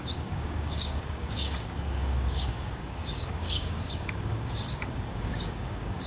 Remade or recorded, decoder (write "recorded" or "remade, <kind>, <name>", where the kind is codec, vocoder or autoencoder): remade, codec, DAC